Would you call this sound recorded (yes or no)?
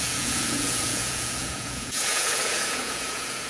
no